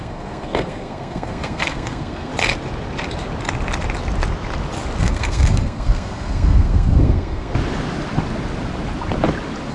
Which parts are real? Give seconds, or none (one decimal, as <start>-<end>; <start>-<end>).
2.3-5.0; 7.5-9.7